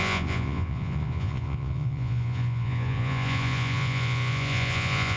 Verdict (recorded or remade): remade